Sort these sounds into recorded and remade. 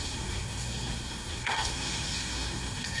remade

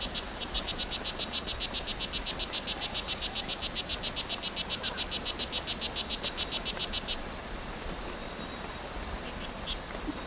recorded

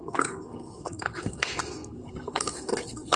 remade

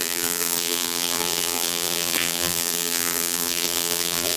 remade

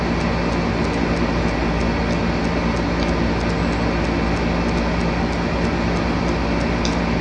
recorded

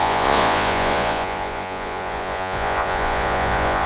remade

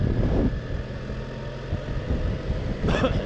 recorded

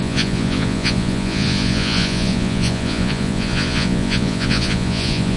remade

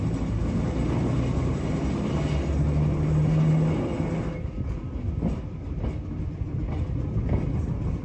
recorded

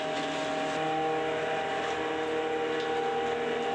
recorded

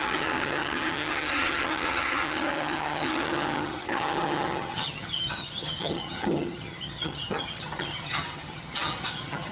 remade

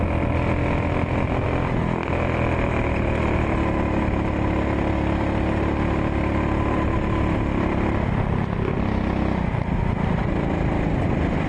recorded